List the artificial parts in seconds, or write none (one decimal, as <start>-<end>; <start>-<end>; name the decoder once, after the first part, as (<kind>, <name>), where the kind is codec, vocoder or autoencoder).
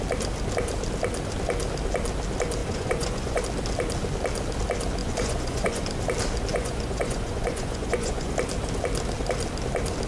2.6-3.4 (vocoder, Vocos); 5.0-5.8; 6.5-8.3